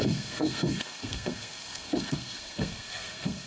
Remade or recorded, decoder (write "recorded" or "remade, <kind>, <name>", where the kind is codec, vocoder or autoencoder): remade, codec, SNAC